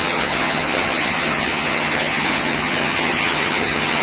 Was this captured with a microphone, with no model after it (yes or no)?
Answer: no